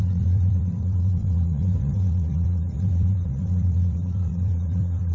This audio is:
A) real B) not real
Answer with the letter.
B